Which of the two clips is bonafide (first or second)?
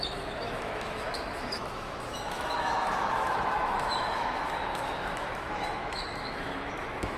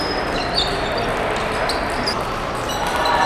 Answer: second